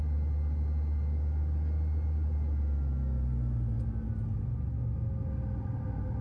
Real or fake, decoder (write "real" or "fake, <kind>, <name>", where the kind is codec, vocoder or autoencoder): real